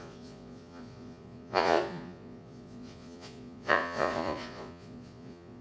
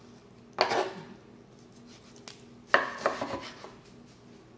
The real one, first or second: second